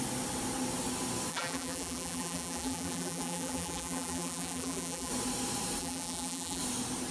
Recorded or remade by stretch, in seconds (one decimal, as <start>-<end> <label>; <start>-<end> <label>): 0.0-1.3 recorded; 1.3-5.1 remade; 5.1-5.8 recorded; 5.8-6.6 remade; 6.6-7.1 recorded